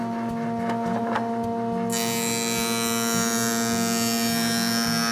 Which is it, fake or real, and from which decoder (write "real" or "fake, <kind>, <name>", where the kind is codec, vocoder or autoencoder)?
real